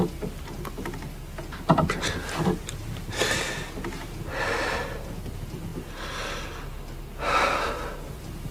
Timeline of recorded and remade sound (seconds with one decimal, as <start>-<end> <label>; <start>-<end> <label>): 0.0-8.5 recorded